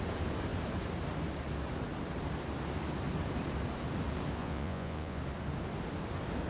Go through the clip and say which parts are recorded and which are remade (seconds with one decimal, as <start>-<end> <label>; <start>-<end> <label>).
0.0-4.4 recorded; 4.4-5.2 remade; 5.2-6.5 recorded